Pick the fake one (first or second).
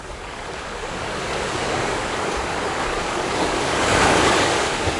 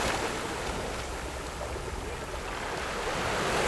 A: first